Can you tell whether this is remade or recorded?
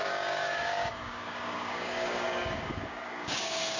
remade